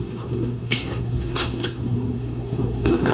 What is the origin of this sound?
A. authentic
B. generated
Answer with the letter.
B